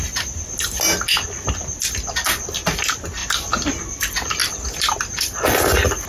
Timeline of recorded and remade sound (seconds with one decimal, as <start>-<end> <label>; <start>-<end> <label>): 0.0-6.1 recorded